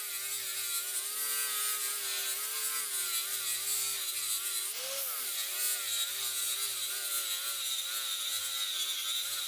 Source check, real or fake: real